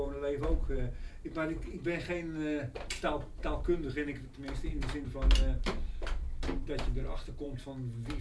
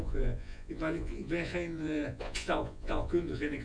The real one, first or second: first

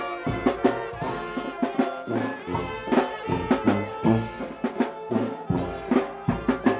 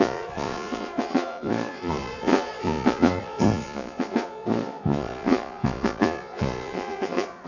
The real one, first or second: first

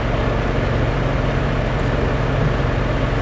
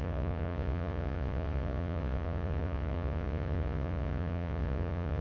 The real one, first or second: first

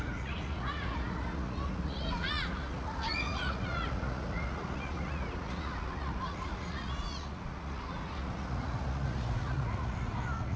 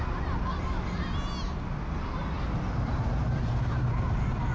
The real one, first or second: second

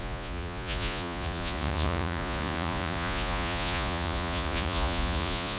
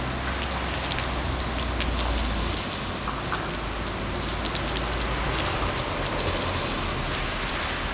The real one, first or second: second